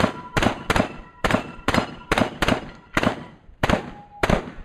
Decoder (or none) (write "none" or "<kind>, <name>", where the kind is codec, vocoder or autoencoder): vocoder, BigVGAN v2